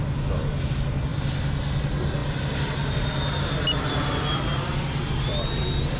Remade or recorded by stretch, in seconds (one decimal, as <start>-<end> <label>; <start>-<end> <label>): 0.0-6.0 recorded